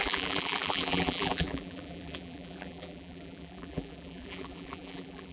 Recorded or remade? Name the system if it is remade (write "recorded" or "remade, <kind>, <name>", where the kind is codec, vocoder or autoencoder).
remade, vocoder, BigVGAN v2